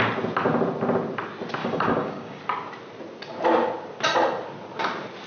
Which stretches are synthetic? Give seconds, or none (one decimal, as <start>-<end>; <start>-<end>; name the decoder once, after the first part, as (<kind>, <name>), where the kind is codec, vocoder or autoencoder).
1.6-2.4 (codec, DAC)